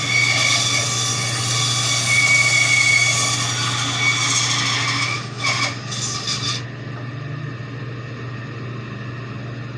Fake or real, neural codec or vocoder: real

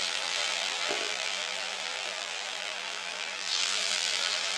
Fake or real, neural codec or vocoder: fake, vocoder, BigVGAN v2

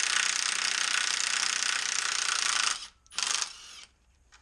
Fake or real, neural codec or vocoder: real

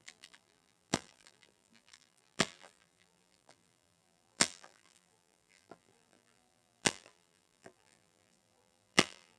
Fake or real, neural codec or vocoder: fake, vocoder, BigVGAN v2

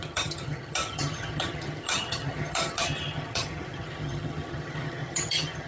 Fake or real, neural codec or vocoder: fake, vocoder, HiFi-GAN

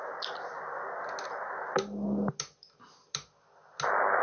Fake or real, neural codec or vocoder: real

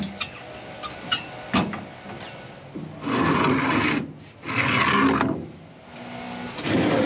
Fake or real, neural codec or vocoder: real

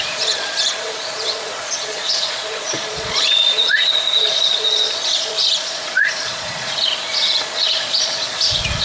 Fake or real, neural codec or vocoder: fake, vocoder, Vocos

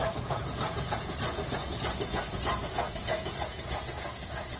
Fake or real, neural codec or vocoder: fake, vocoder, Vocos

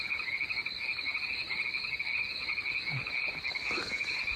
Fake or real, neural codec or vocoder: real